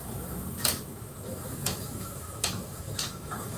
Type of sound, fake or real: fake